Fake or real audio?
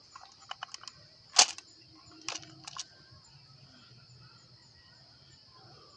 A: real